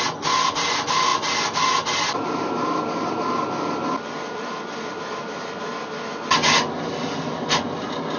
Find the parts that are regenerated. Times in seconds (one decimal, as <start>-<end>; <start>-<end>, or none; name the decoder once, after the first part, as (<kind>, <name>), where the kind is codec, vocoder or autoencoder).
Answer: none